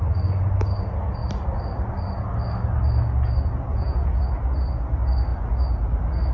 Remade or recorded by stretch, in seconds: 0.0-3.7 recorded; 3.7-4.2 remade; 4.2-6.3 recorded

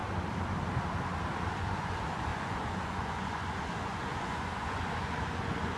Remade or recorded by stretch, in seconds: 0.0-1.5 recorded; 1.5-5.8 remade

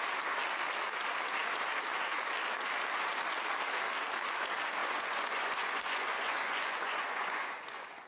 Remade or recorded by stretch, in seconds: 0.0-4.8 recorded; 4.8-8.1 remade

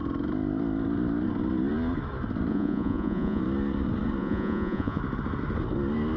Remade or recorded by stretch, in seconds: 0.0-2.5 recorded; 2.5-3.4 remade; 3.4-4.2 recorded; 4.2-5.0 remade; 5.0-6.2 recorded

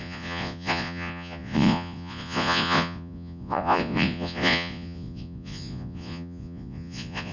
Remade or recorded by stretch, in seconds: 0.0-7.3 remade

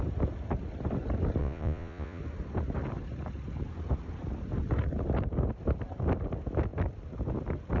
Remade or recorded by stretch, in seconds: 0.0-1.4 recorded; 1.4-2.2 remade; 2.2-7.8 recorded

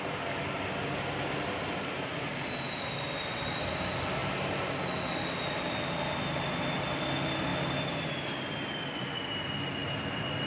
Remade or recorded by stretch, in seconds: 0.0-10.5 recorded

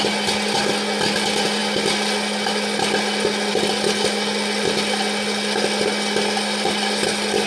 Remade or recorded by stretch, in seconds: 0.0-7.5 recorded